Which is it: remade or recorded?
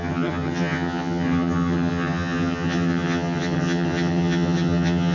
remade